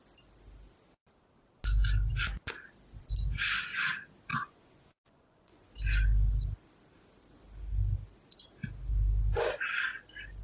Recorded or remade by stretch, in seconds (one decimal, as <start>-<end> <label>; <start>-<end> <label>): 0.0-4.3 recorded; 4.3-5.7 remade; 5.7-10.4 recorded